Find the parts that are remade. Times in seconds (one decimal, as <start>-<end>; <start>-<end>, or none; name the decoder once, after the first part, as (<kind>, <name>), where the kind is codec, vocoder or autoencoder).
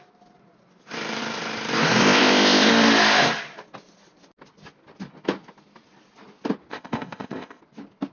2.0-2.7 (codec, ZipCodec); 6.7-7.6